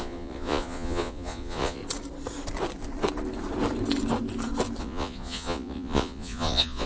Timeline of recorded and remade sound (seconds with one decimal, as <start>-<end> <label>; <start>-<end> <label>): 0.0-1.8 remade; 1.8-4.8 recorded; 4.8-6.9 remade